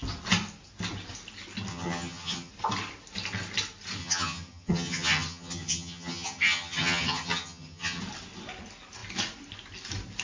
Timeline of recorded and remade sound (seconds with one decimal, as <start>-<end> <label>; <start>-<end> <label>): 0.0-1.7 recorded; 1.7-2.5 remade; 2.5-4.0 recorded; 4.0-8.0 remade; 8.0-10.2 recorded